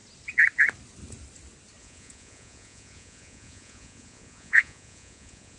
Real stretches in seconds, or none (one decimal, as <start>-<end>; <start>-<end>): 0.0-1.8